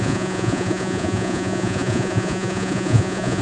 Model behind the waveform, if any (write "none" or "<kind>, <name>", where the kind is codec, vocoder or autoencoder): vocoder, Vocos